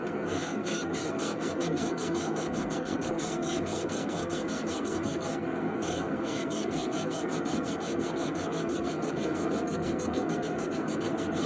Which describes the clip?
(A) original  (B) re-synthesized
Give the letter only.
B